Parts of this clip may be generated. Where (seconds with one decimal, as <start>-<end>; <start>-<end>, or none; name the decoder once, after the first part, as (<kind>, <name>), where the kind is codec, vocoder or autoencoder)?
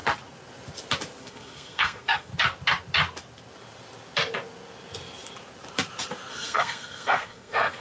1.2-2.3 (codec, SNAC); 6.3-7.8